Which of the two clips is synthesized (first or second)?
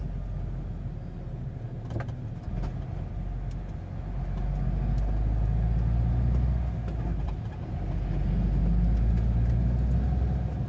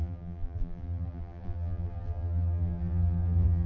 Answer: second